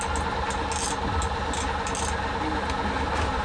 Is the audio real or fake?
real